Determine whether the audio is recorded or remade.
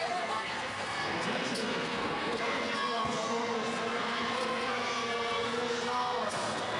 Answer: remade